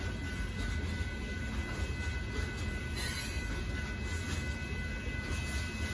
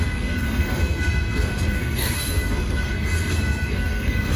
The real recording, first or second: first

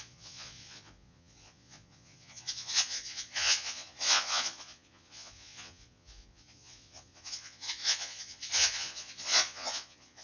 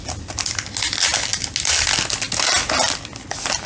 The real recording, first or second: second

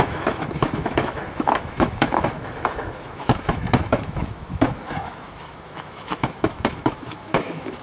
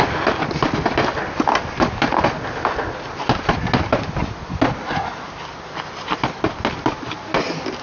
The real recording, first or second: second